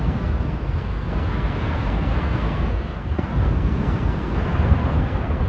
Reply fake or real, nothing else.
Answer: fake